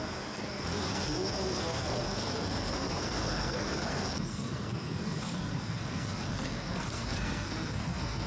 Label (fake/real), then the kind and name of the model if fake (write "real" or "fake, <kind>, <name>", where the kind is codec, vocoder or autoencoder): fake, codec, SNAC